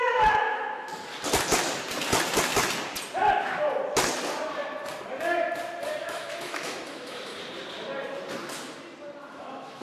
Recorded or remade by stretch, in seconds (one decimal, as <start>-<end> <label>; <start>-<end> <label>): 0.0-0.9 remade; 0.9-6.0 recorded; 6.0-7.3 remade; 7.3-9.3 recorded; 9.3-9.8 remade